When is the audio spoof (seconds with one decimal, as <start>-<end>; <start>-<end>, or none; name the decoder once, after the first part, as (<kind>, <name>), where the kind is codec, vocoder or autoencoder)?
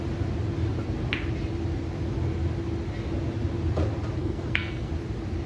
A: 4.2-4.9 (codec, SNAC)